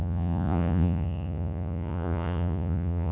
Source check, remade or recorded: remade